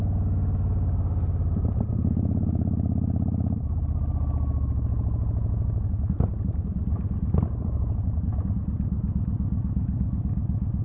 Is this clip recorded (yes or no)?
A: yes